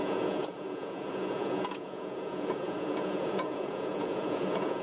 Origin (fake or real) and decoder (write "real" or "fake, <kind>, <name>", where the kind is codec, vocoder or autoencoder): fake, vocoder, Vocos